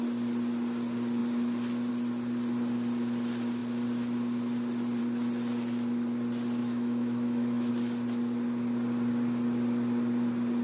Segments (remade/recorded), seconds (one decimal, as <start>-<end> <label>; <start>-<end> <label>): 0.0-6.6 recorded; 6.6-7.7 remade; 7.7-10.6 recorded